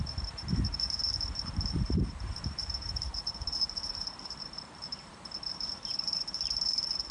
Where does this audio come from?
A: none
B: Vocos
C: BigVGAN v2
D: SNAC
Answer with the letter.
C